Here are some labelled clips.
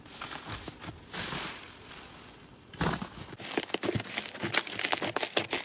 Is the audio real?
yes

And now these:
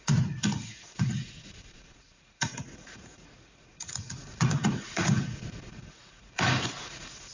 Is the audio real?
no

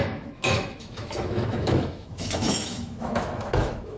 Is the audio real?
no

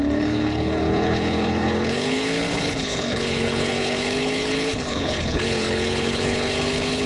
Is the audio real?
no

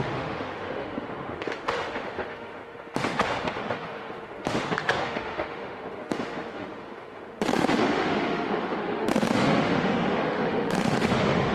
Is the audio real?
no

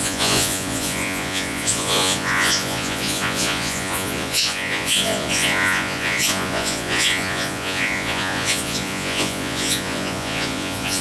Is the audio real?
no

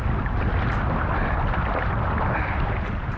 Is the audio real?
yes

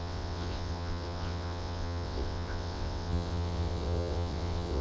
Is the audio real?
no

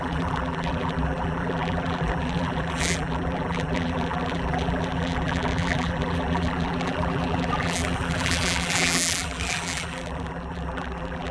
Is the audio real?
no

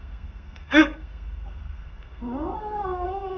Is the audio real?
no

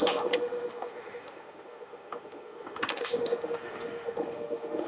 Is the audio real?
no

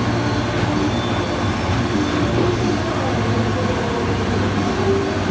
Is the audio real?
yes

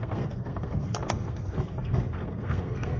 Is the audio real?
no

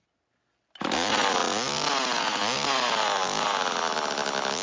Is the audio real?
yes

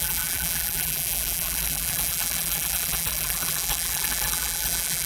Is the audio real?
no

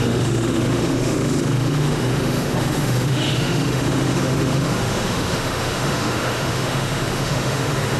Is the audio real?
no